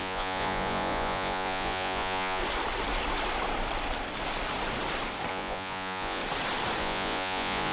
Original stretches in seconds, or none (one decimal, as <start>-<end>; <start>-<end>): 2.4-5.3; 6.2-6.8